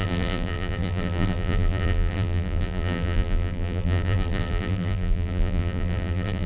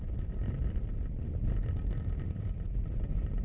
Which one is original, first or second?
second